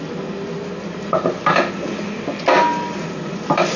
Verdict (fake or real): real